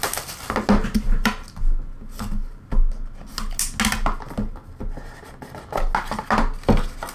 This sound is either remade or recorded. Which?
recorded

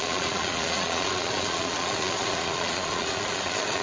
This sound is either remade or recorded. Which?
remade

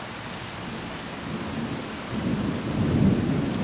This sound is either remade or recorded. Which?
recorded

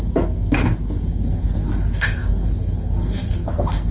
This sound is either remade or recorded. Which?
remade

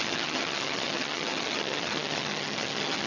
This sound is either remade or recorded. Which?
remade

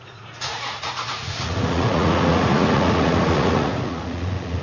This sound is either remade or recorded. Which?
remade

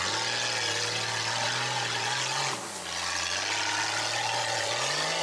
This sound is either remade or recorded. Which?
recorded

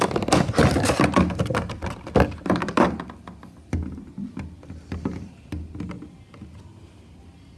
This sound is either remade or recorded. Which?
recorded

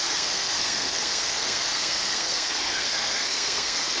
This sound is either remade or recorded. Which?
remade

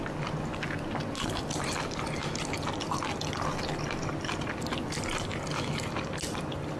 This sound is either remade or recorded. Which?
recorded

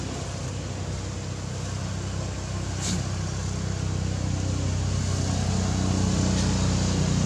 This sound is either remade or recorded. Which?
recorded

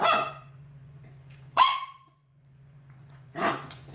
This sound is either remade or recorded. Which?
remade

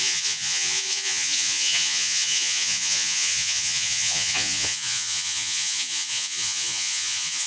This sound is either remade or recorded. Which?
remade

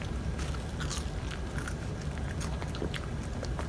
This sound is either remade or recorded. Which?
recorded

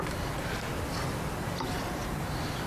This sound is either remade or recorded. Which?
recorded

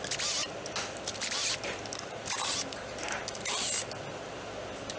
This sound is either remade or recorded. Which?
recorded